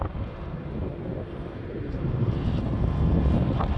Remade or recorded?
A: recorded